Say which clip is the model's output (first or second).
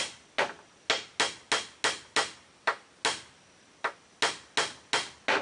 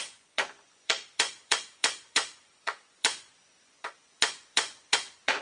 second